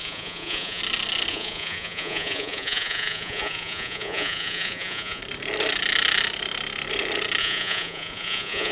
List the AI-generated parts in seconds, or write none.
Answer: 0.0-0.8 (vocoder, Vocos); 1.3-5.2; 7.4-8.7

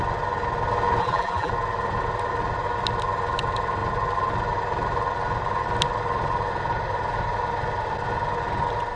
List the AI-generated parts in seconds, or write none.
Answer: 1.0-1.5 (vocoder, BigVGAN v2)

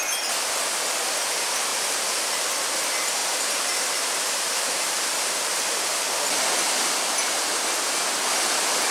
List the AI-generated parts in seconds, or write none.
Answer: 1.7-2.4 (vocoder, BigVGAN v2); 3.2-5.8

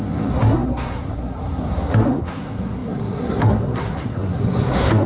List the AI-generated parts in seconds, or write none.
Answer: 0.0-5.1 (codec, SNAC)

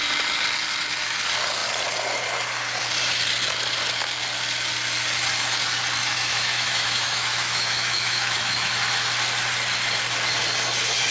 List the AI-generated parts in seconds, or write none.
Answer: 6.0-8.8 (autoencoder, DAC-VAE)

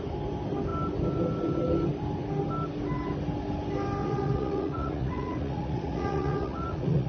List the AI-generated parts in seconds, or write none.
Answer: 4.0-7.1 (vocoder, Vocos)